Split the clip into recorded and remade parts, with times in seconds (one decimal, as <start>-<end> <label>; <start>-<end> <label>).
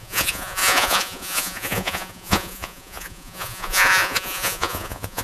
0.0-5.2 remade